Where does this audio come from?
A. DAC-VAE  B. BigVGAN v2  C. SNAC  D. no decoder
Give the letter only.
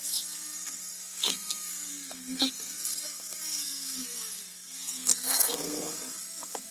C